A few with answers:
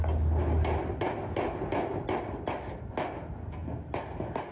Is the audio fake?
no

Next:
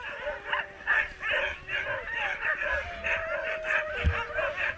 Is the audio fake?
no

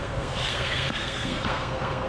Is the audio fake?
yes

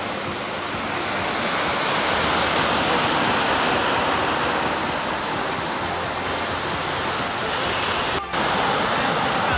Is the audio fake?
no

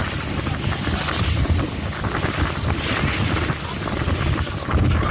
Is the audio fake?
no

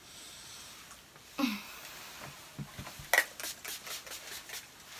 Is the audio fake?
no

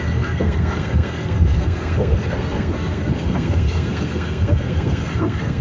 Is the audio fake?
yes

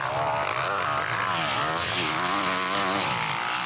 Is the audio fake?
no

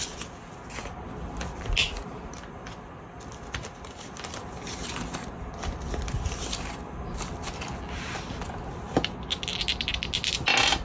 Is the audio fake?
no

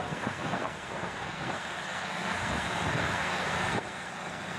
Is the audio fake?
yes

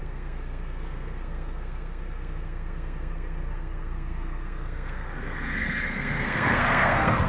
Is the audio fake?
yes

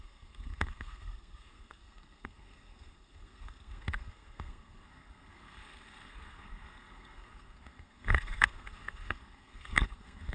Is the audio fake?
yes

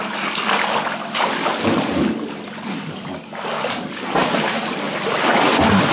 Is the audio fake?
no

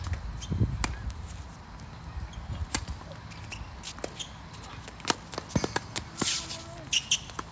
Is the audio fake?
no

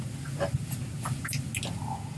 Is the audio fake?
no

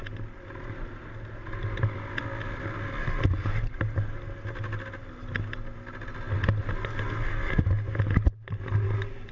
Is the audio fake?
no